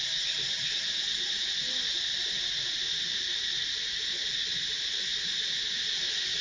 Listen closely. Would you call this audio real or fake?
real